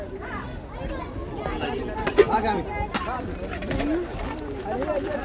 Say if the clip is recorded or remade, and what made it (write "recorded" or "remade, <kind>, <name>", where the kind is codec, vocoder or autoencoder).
recorded